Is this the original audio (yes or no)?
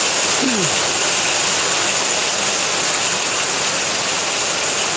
yes